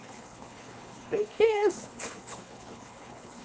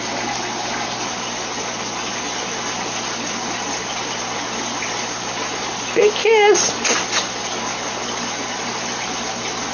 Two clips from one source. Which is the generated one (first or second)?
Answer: first